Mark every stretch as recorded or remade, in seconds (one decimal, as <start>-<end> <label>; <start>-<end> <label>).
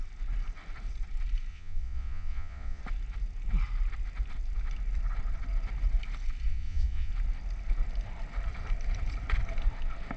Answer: 0.0-1.5 recorded; 1.5-2.8 remade; 2.8-6.5 recorded; 6.5-7.1 remade; 7.1-10.2 recorded